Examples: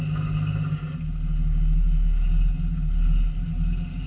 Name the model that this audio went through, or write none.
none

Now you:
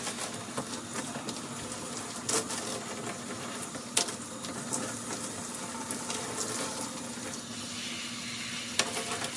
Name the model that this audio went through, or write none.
none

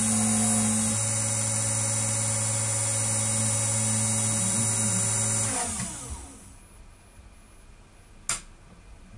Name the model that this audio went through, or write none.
none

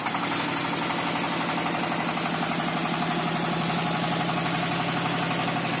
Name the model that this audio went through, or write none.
none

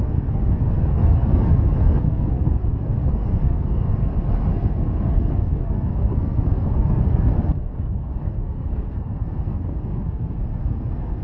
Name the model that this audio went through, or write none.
codec, SNAC